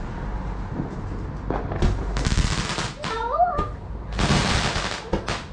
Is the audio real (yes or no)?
yes